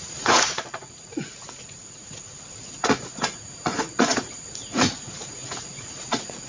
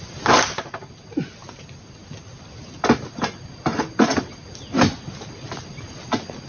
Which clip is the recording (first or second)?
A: second